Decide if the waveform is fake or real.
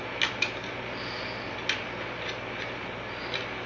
real